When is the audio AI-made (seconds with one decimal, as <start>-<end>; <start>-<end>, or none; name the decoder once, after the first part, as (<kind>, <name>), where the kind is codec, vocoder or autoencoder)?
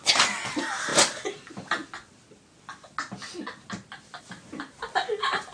none